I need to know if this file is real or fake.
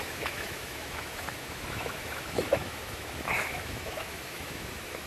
fake